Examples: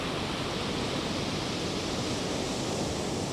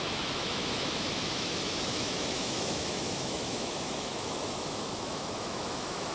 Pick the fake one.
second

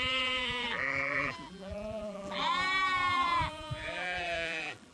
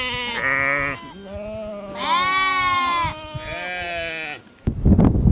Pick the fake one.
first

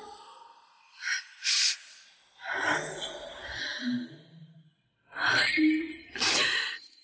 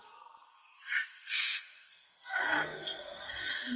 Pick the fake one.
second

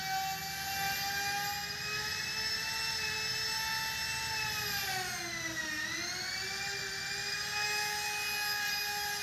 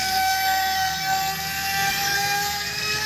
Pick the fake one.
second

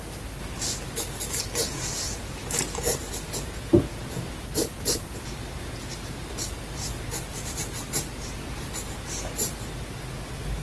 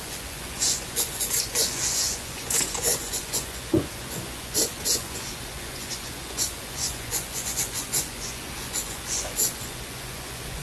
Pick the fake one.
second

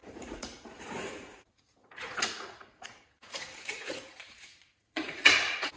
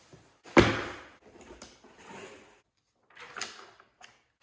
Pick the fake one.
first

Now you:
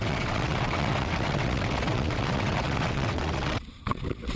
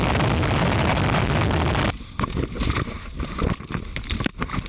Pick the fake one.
first